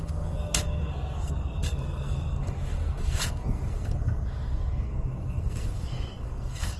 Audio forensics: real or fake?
fake